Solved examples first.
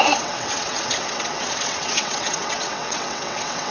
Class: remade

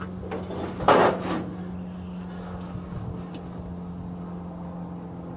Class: recorded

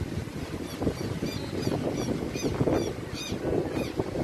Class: recorded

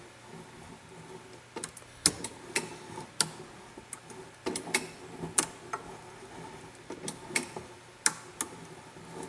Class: recorded